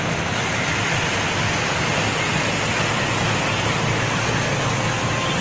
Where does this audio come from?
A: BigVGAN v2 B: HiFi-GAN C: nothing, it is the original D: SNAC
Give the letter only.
C